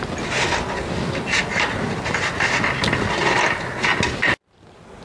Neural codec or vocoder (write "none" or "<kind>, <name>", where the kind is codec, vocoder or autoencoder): none